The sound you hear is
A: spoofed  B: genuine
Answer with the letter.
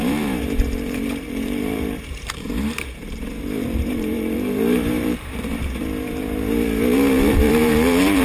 A